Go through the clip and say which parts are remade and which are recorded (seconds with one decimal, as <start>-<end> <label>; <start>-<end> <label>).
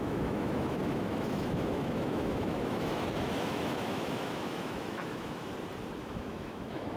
0.0-5.5 remade; 5.5-6.0 recorded; 6.0-7.0 remade